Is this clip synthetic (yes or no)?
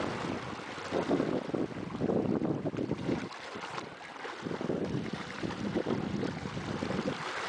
no